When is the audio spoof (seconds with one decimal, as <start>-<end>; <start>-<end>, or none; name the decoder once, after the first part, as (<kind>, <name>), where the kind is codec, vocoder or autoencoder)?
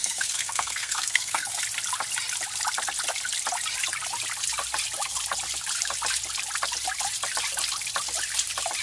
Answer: 0.0-1.6 (codec, SNAC)